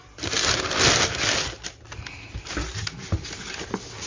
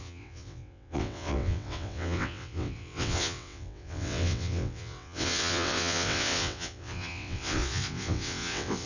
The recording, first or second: first